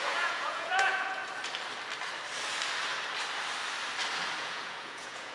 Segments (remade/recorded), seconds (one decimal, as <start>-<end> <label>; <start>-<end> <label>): 0.0-1.2 remade; 1.2-4.4 recorded; 4.4-5.3 remade